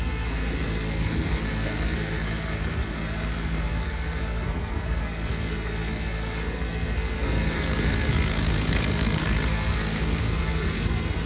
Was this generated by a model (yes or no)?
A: yes